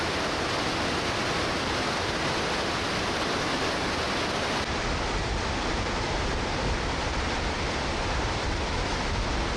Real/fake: fake